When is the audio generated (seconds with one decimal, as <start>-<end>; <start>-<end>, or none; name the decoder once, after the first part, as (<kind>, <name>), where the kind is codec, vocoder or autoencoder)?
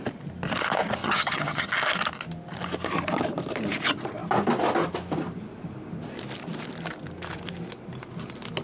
1.0-1.7 (vocoder, HiFi-GAN)